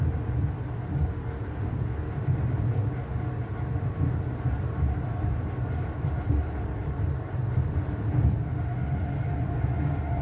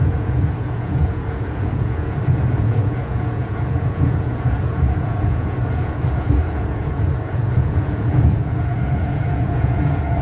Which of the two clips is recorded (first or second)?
first